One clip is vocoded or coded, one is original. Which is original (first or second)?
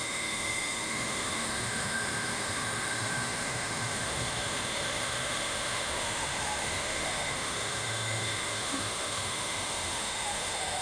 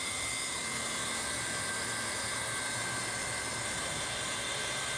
second